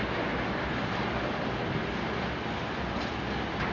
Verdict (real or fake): real